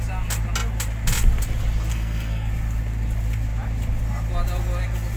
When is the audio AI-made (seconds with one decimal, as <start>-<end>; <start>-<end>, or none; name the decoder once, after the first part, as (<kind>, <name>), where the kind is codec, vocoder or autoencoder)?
1.9-2.5 (codec, SNAC)